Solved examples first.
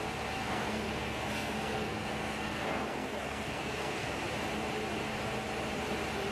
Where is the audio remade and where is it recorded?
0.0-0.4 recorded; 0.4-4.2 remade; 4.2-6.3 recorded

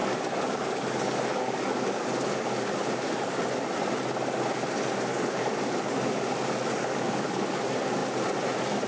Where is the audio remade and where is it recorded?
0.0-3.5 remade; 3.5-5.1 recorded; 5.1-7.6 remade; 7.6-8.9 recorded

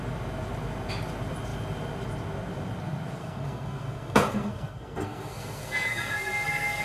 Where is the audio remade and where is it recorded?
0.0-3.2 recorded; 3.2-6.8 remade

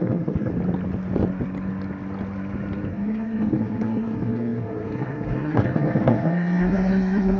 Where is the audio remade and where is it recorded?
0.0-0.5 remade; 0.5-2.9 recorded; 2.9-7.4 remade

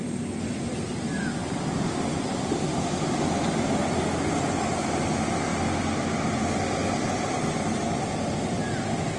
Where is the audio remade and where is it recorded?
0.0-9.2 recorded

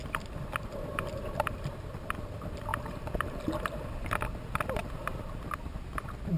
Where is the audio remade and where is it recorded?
0.0-1.9 remade; 1.9-2.7 recorded; 2.7-3.3 remade; 3.3-4.8 recorded; 4.8-5.9 remade; 5.9-6.4 recorded